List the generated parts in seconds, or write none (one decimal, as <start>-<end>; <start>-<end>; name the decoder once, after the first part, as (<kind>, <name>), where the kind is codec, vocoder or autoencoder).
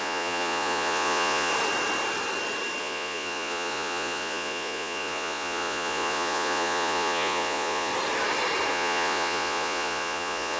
0.0-1.5 (vocoder, Vocos); 2.8-7.9; 8.7-10.6